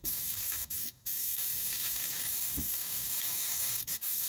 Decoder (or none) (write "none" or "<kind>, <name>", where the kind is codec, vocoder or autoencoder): codec, DAC